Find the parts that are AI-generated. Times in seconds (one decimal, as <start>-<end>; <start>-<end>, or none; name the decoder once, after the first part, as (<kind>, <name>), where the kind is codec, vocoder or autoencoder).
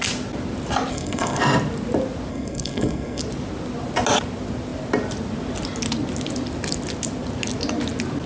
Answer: 0.9-1.4 (codec, SNAC); 2.3-3.2